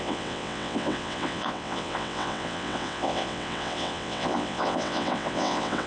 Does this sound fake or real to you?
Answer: fake